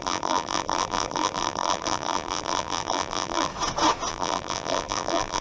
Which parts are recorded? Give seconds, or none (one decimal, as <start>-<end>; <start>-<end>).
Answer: 3.5-4.1